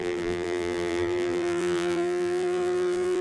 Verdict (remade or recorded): remade